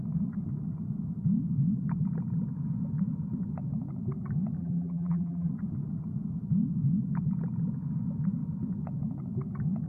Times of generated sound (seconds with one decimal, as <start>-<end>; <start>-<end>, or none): 4.6-5.5